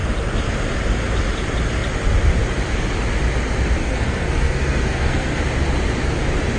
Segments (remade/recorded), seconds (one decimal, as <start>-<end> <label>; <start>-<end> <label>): 0.0-3.8 recorded; 3.8-5.4 remade; 5.4-6.6 recorded